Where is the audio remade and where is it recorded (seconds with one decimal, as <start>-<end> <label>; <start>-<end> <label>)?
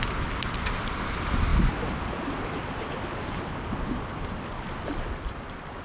0.0-5.8 recorded